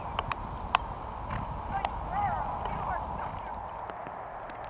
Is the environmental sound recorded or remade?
recorded